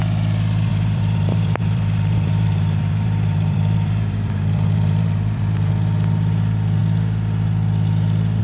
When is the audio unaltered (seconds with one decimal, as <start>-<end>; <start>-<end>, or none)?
0.0-0.7; 5.7-8.4